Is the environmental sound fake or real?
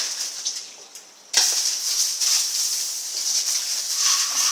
real